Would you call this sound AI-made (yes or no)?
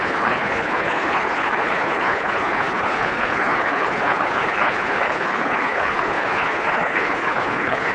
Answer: yes